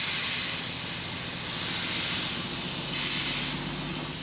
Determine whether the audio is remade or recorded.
recorded